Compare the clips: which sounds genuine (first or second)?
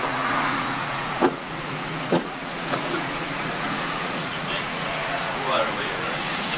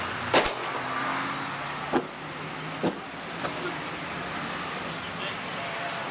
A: second